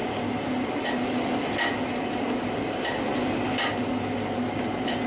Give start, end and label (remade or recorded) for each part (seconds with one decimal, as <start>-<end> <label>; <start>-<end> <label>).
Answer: 0.0-5.1 recorded